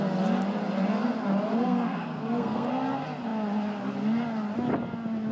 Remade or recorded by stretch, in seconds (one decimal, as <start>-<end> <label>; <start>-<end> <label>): 0.0-1.5 recorded; 1.5-2.7 remade; 2.7-5.3 recorded